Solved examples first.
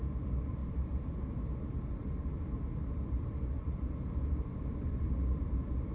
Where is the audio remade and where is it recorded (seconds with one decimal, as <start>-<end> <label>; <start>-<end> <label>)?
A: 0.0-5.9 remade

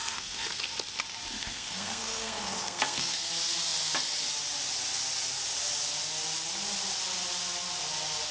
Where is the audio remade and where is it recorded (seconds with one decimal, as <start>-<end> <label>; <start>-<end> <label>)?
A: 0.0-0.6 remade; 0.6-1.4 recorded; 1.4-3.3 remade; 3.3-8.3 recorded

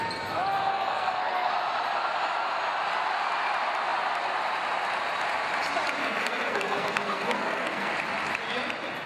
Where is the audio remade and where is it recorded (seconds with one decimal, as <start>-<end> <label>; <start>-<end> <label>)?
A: 0.0-0.7 recorded; 0.7-1.5 remade; 1.5-6.0 recorded; 6.0-7.9 remade; 7.9-9.1 recorded